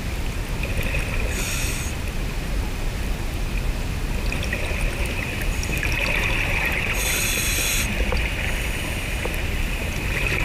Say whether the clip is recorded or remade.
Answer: recorded